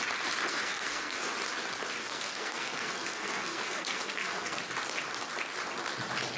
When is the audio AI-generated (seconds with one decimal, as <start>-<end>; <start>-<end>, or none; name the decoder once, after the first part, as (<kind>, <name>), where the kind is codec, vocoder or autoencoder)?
0.5-1.3 (codec, SNAC); 2.0-4.6